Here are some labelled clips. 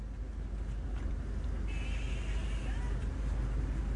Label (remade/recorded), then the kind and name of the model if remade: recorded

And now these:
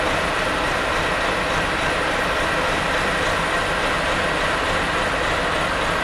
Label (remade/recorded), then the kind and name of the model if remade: recorded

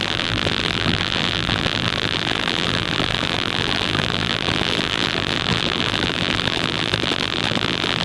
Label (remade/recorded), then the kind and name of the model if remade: remade, vocoder, BigVGAN v2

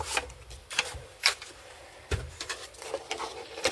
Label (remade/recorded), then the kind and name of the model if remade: remade, vocoder, BigVGAN v2